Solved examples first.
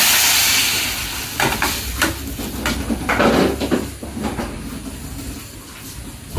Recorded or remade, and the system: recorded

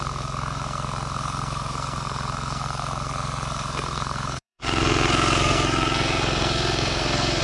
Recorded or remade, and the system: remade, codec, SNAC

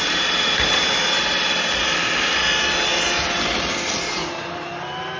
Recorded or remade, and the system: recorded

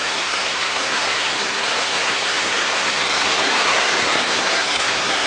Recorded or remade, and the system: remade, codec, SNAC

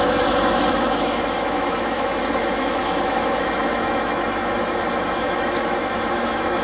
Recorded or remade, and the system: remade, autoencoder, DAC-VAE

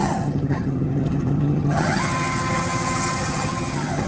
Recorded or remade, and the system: remade, vocoder, HiFi-GAN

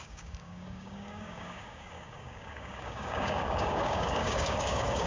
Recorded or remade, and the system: remade, codec, DAC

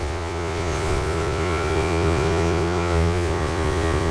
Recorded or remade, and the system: remade, vocoder, Vocos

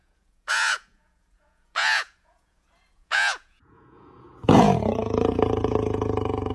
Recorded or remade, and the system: remade, vocoder, Vocos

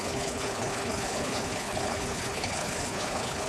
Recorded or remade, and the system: remade, codec, HILCodec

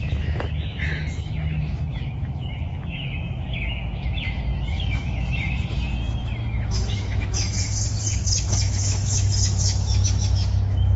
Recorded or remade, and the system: remade, autoencoder, DAC-VAE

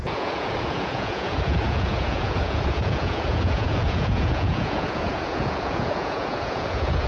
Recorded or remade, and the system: remade, vocoder, Vocos